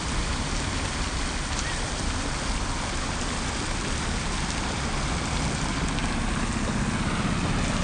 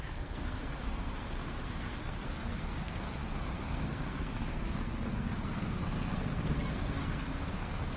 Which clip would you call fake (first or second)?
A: second